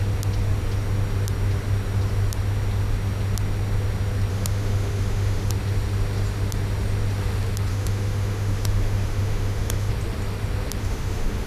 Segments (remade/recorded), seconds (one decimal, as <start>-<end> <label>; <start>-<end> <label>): 0.0-4.3 recorded; 4.3-5.5 remade; 5.5-7.7 recorded; 7.7-9.9 remade; 9.9-10.8 recorded; 10.8-11.5 remade

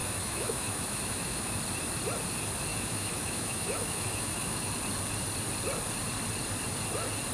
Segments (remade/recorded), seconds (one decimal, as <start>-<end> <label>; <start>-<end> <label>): 0.0-1.5 remade; 1.5-2.7 recorded; 2.7-4.7 remade; 4.7-7.3 recorded

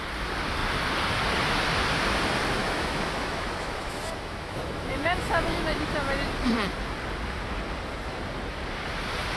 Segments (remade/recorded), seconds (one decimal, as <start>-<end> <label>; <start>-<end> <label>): 0.0-2.6 recorded; 2.6-6.0 remade; 6.0-9.4 recorded

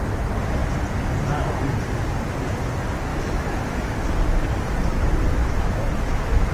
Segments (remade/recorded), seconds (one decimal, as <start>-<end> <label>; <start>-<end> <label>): 0.0-3.1 recorded; 3.1-4.1 remade; 4.1-5.4 recorded; 5.4-6.5 remade

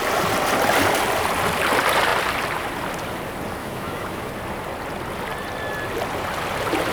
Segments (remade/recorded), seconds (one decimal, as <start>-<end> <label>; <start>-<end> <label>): 0.0-3.6 recorded; 3.6-4.3 remade; 4.3-6.9 recorded

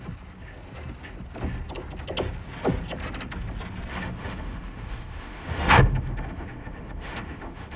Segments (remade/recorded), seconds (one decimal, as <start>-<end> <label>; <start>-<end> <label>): 0.0-3.9 recorded; 3.9-7.8 remade

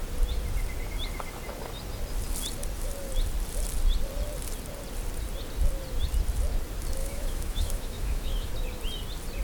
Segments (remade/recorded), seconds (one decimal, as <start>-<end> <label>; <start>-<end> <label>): 0.0-7.0 recorded; 7.0-8.5 remade; 8.5-9.4 recorded

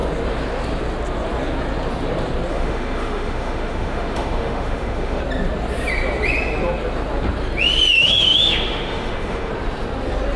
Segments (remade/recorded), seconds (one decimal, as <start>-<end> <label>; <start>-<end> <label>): 0.0-2.5 recorded; 2.5-5.2 remade; 5.2-8.0 recorded; 8.0-9.5 remade; 9.5-10.4 recorded